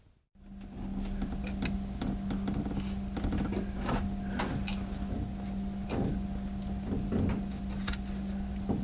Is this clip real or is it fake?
real